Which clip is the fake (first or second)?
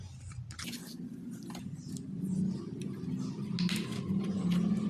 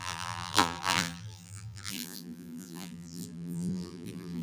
second